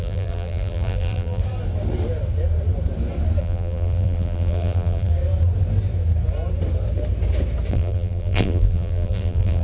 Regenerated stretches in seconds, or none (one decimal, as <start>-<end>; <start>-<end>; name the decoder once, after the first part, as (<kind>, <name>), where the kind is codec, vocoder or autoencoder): 0.0-1.4 (vocoder, BigVGAN v2); 3.4-5.1; 7.7-9.6